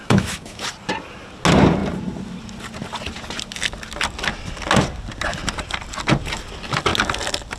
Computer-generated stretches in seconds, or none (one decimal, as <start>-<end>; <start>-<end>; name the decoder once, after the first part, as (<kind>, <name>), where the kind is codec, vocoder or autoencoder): 0.0-0.6 (autoencoder, DAC-VAE)